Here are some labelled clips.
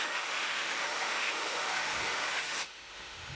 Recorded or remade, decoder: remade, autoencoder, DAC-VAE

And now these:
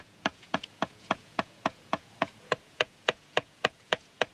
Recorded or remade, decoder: remade, vocoder, Vocos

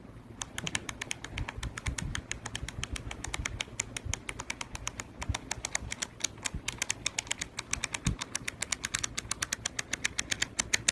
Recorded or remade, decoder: recorded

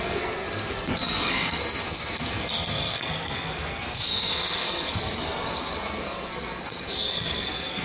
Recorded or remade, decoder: remade, codec, SNAC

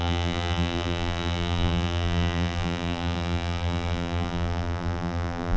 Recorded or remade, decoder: remade, vocoder, BigVGAN v2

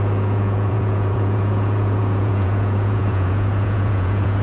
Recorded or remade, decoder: remade, vocoder, Vocos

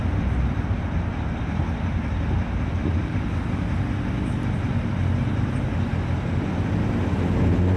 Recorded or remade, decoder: recorded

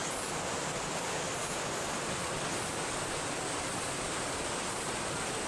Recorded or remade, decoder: recorded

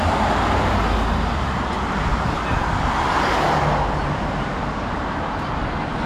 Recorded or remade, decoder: recorded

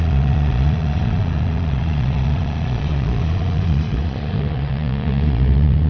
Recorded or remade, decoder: remade, vocoder, Vocos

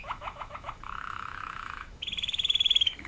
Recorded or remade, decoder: remade, autoencoder, DAC-VAE